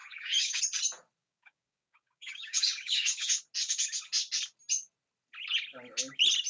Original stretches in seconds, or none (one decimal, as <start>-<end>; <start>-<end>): 0.6-1.2; 3.4-6.5